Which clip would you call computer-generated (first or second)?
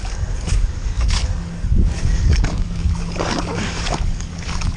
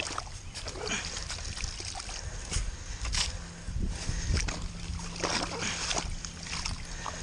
first